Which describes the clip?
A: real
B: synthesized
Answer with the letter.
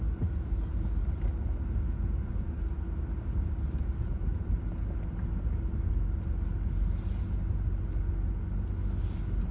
A